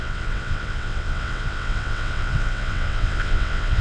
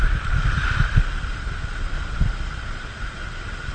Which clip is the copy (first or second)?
first